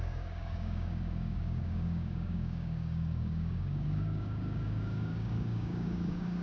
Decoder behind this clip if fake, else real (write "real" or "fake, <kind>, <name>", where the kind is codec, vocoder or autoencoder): fake, codec, DAC